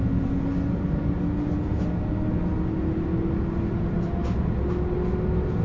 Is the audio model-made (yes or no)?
no